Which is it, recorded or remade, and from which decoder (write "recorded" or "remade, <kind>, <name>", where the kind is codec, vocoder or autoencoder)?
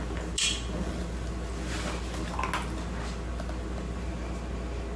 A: recorded